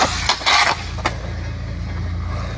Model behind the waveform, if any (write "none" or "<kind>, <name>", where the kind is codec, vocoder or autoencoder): none